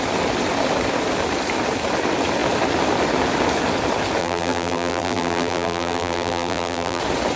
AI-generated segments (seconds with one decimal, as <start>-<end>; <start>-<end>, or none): 4.2-7.0

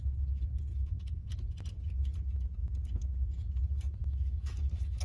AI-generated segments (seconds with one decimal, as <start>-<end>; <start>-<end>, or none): 0.7-1.3; 4.0-5.0

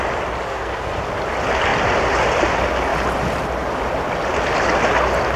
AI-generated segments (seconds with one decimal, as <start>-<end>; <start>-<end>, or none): 0.5-1.0

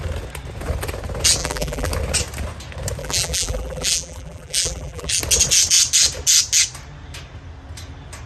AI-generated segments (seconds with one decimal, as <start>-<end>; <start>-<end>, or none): 1.4-1.9; 3.0-5.2

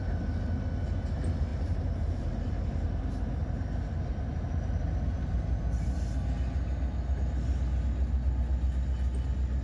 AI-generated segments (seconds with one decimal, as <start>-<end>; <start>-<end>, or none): 1.5-5.7